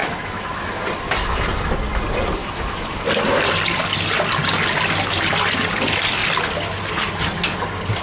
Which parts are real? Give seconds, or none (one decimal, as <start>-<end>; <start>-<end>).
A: 0.8-2.4; 3.0-8.0